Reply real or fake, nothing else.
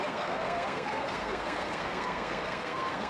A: fake